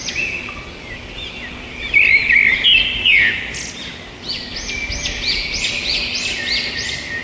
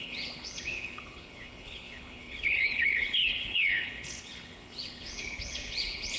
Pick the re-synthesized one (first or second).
second